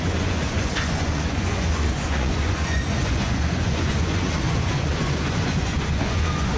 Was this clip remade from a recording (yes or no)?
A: yes